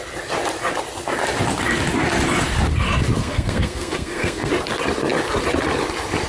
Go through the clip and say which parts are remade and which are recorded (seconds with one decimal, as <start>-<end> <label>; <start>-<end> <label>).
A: 0.0-3.2 recorded; 3.2-4.5 remade; 4.5-6.3 recorded